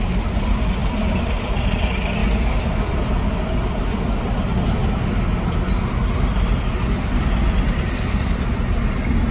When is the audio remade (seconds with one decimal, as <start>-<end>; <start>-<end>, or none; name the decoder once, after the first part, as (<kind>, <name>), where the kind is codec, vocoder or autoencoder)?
none